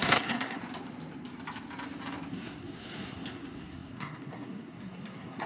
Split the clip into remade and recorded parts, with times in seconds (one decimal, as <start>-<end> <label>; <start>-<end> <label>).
0.0-0.6 remade; 0.6-2.3 recorded; 2.3-5.5 remade